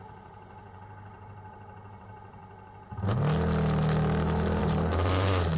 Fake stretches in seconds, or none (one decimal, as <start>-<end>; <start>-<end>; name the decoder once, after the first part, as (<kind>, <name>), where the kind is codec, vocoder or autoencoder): 0.0-2.4 (vocoder, BigVGAN v2); 4.6-5.6

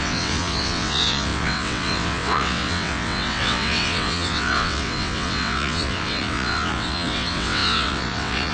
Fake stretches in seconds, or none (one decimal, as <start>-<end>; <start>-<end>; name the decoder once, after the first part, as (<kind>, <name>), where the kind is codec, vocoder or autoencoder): 0.0-8.5 (vocoder, WaveNeXt)

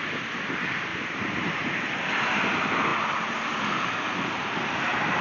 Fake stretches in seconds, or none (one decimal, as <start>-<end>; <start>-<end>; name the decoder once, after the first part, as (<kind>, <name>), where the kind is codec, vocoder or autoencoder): 0.9-1.9 (vocoder, BigVGAN v2)

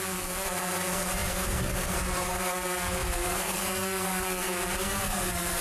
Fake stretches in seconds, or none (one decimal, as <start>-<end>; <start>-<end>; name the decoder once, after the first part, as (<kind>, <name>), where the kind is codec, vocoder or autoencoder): 0.0-5.6 (codec, SNAC)

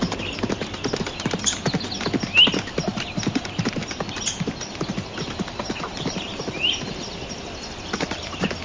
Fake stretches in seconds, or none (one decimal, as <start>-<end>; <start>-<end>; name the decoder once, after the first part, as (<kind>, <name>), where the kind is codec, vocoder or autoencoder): none